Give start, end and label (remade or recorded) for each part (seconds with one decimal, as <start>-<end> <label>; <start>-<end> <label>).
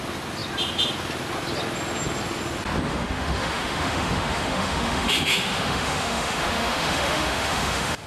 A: 0.0-2.9 recorded; 2.9-8.1 remade